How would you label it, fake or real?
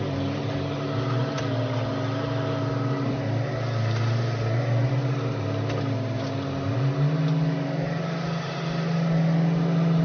real